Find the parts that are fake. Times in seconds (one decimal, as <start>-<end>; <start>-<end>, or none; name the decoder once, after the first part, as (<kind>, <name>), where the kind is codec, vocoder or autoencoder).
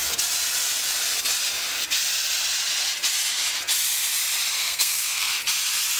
4.6-5.3 (codec, SNAC)